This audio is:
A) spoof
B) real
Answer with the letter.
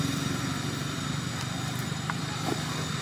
B